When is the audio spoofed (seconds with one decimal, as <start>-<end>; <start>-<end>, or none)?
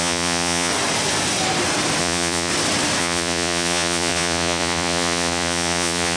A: 0.0-0.7; 2.0-2.5; 3.0-6.2